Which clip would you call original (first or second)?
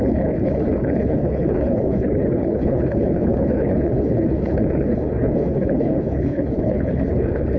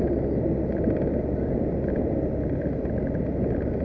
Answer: second